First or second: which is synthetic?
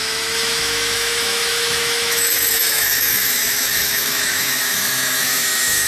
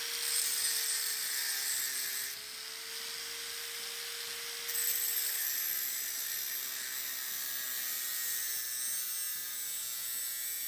first